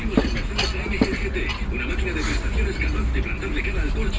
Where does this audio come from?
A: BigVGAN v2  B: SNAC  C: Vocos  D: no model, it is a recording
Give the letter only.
D